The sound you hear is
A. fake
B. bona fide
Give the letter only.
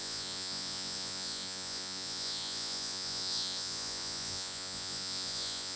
A